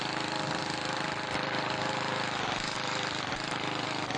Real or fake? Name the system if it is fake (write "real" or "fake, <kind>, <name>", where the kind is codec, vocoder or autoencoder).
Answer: fake, vocoder, BigVGAN v2